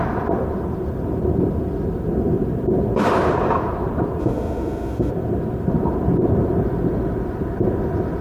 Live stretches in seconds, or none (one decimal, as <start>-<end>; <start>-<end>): 0.0-4.2; 5.1-8.2